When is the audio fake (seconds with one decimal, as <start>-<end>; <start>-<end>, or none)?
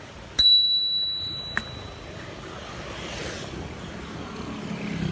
none